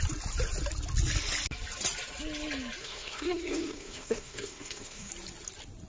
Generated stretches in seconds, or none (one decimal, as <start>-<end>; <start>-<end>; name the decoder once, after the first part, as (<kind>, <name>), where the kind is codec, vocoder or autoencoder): 2.8-5.1 (codec, SNAC)